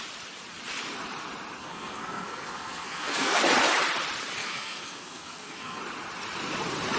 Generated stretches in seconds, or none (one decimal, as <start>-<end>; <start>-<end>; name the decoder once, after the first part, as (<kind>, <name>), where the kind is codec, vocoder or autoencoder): 1.6-3.4 (codec, SNAC); 4.4-5.8